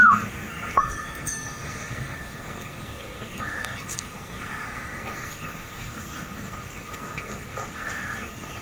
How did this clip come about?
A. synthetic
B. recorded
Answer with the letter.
A